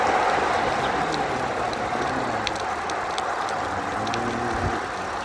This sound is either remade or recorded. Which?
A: recorded